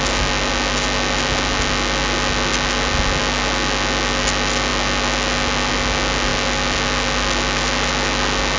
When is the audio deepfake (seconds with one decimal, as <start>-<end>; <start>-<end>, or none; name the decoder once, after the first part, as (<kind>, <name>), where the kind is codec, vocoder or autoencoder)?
none